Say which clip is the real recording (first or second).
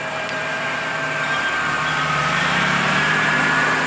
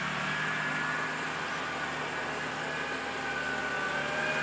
second